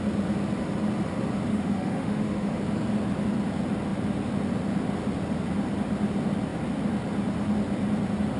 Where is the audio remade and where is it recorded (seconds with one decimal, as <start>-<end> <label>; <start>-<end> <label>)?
0.0-1.5 recorded; 1.5-2.6 remade; 2.6-8.4 recorded